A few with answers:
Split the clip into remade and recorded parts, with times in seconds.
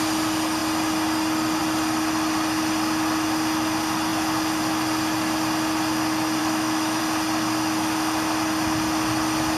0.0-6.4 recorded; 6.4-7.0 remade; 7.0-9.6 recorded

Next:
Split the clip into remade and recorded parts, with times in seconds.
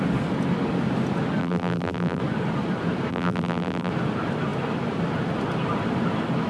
0.0-1.4 recorded; 1.4-2.2 remade; 2.2-3.1 recorded; 3.1-3.9 remade; 3.9-6.5 recorded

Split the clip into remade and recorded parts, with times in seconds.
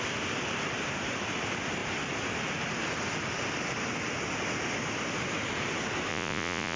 0.0-6.1 recorded; 6.1-6.8 remade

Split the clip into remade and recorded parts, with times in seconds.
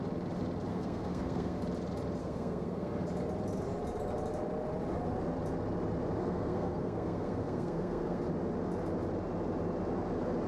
0.0-0.7 recorded; 0.7-1.6 remade; 1.6-2.2 recorded; 2.2-2.9 remade; 2.9-6.2 recorded; 6.2-8.2 remade; 8.2-10.5 recorded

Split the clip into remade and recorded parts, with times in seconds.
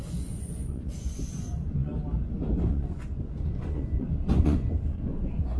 0.0-1.9 remade; 1.9-2.7 recorded; 2.7-5.6 remade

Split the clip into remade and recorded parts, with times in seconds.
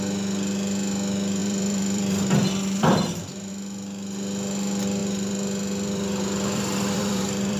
0.0-1.4 recorded; 1.4-3.5 remade; 3.5-5.0 recorded; 5.0-7.6 remade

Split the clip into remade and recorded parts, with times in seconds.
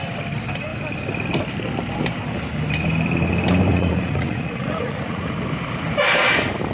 0.0-3.7 recorded; 3.7-5.3 remade; 5.3-6.7 recorded